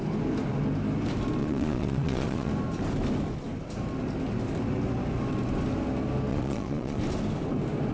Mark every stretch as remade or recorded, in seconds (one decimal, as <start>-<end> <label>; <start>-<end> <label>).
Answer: 0.0-1.4 recorded; 1.4-2.5 remade; 2.5-6.3 recorded; 6.3-7.0 remade; 7.0-7.9 recorded